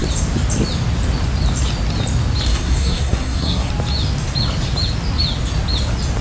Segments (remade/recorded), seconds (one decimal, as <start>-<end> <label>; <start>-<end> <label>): 0.0-2.5 recorded; 2.5-3.7 remade; 3.7-6.2 recorded